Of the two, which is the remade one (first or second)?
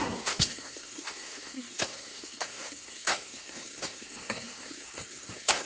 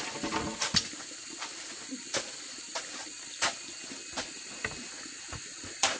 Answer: first